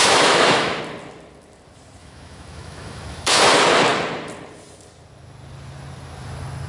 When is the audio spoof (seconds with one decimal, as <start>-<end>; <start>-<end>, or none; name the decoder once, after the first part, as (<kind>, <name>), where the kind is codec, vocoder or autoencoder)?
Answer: 0.0-0.8 (autoencoder, DAC-VAE); 2.0-3.4